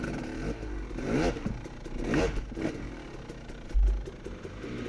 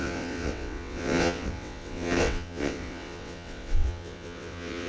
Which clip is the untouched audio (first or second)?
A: first